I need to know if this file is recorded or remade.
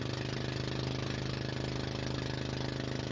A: recorded